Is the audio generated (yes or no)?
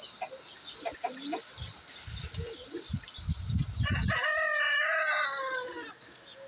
no